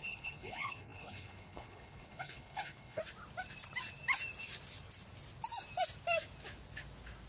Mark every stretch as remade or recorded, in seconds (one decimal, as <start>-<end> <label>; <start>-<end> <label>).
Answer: 0.0-3.0 remade; 3.0-7.3 recorded